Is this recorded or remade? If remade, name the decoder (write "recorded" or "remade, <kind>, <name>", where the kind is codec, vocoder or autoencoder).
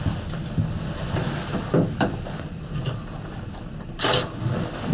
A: recorded